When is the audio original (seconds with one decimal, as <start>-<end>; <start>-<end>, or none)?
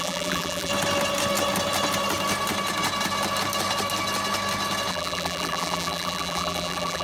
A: 0.7-4.9